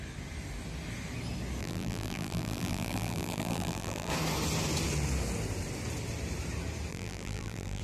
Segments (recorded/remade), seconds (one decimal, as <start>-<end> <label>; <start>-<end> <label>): 0.0-1.6 recorded; 1.6-4.1 remade; 4.1-6.9 recorded; 6.9-7.8 remade